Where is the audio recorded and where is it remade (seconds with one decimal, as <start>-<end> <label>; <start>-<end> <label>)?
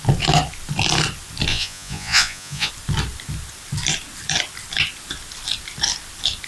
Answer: 0.0-1.5 recorded; 1.5-2.7 remade; 2.7-6.5 recorded